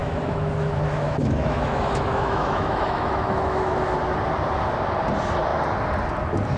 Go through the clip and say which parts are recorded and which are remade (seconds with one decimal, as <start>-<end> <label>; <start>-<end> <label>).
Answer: 0.0-4.0 remade; 4.0-6.6 recorded

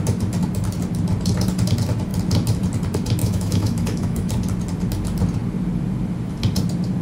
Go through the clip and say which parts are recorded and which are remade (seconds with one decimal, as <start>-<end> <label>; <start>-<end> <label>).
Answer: 0.0-3.2 recorded; 3.2-4.3 remade; 4.3-7.0 recorded

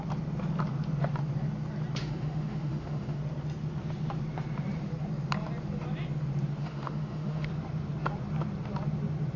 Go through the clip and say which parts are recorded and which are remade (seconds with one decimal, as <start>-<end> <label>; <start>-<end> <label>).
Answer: 0.0-2.0 recorded; 2.0-3.2 remade; 3.2-6.6 recorded; 6.6-7.5 remade; 7.5-9.4 recorded

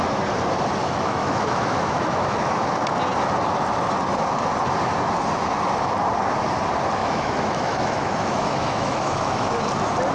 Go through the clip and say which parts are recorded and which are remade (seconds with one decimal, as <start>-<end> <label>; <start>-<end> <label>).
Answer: 0.0-0.8 recorded; 0.8-2.6 remade; 2.6-7.0 recorded; 7.0-9.6 remade; 9.6-10.1 recorded

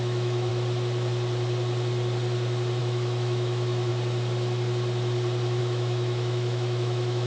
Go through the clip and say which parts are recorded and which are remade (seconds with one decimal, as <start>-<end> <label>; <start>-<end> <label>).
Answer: 0.0-0.5 remade; 0.5-2.8 recorded; 2.8-3.9 remade; 3.9-5.6 recorded; 5.6-7.3 remade

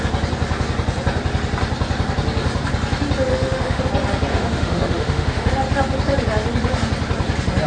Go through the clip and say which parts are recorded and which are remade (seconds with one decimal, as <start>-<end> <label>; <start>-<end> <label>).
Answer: 0.0-3.3 recorded; 3.3-3.8 remade; 3.8-4.3 recorded; 4.3-5.5 remade; 5.5-7.7 recorded